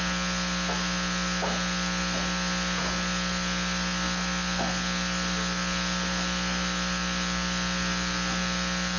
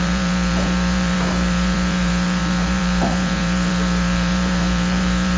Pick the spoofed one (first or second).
second